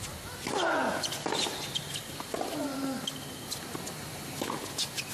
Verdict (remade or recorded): recorded